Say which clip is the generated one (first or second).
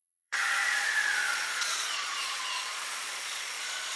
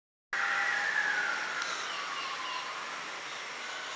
first